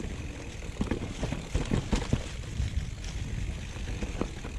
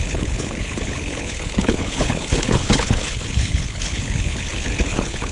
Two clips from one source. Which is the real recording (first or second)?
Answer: first